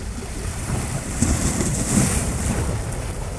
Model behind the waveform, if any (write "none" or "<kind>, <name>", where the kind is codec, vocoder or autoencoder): vocoder, BigVGAN v2